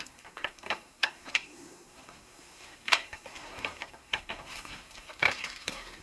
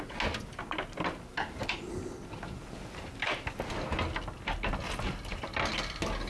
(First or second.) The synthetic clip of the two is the first